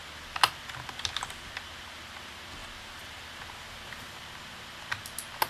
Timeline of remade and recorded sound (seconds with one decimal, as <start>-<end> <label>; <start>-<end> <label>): 0.0-2.6 recorded; 2.6-3.4 remade; 3.4-5.5 recorded